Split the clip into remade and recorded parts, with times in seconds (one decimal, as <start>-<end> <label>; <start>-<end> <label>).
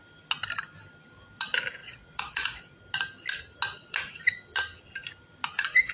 0.0-1.8 recorded; 1.8-2.6 remade; 2.6-5.9 recorded